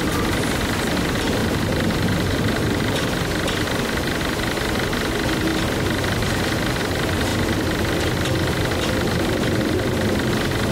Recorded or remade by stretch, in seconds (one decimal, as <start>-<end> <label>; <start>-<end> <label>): 0.0-1.4 recorded; 1.4-3.0 remade; 3.0-10.7 recorded